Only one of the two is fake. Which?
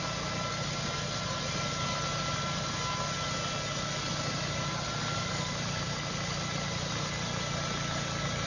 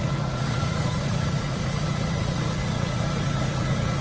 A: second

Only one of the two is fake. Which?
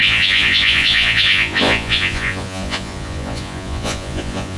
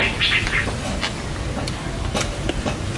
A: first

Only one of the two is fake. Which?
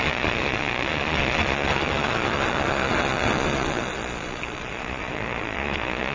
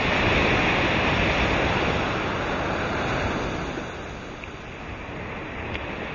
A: first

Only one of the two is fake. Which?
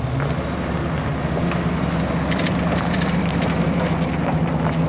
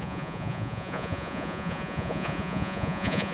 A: second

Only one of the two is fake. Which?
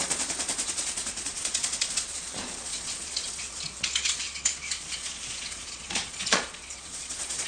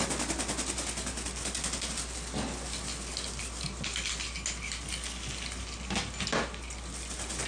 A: first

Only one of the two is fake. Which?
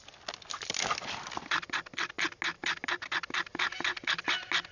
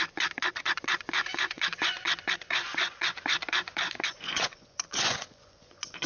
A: second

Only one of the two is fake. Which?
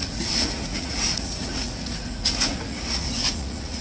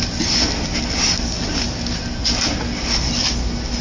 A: first